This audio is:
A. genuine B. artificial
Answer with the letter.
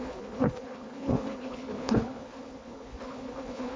B